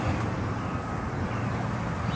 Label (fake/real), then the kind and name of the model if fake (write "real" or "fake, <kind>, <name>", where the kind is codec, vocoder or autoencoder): real